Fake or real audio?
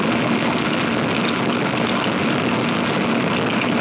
real